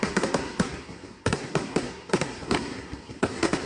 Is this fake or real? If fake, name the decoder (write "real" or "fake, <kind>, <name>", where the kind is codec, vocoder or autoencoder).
fake, codec, SNAC